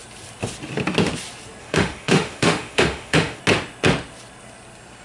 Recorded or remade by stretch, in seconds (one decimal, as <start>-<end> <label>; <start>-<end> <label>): 0.0-1.6 recorded; 1.6-3.4 remade; 3.4-5.0 recorded

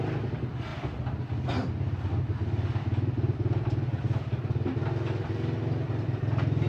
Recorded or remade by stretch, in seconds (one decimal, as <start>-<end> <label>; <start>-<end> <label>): 0.0-6.7 recorded

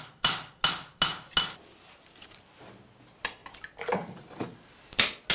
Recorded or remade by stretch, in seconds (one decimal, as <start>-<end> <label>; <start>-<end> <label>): 0.0-5.3 recorded

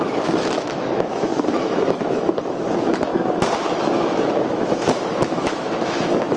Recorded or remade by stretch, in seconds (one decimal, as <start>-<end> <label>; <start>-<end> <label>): 0.0-3.1 remade; 3.1-3.6 recorded; 3.6-6.4 remade

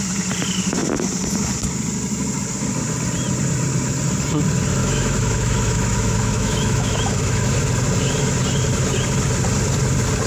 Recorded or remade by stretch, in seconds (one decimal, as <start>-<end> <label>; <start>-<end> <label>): 0.0-4.8 recorded; 4.8-7.5 remade; 7.5-10.3 recorded

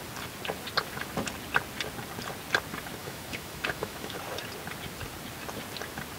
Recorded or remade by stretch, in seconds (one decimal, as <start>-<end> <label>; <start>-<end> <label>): 0.0-3.0 recorded; 3.0-4.2 remade; 4.2-6.2 recorded

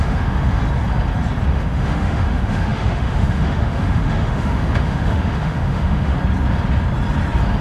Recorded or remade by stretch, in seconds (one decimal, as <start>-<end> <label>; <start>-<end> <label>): 0.0-0.6 remade; 0.6-1.5 recorded; 1.5-6.1 remade; 6.1-7.6 recorded

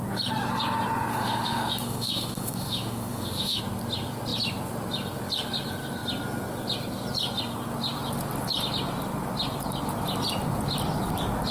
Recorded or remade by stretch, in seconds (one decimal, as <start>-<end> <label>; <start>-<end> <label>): 0.0-1.1 recorded; 1.1-3.6 remade; 3.6-11.5 recorded